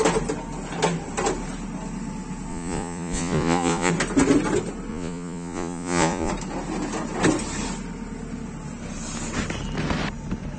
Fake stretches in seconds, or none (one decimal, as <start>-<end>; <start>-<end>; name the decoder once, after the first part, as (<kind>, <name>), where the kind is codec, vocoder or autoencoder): 2.5-3.9 (vocoder, Vocos); 4.9-6.3